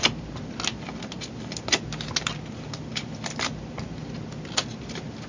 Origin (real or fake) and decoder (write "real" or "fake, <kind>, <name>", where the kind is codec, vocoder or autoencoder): real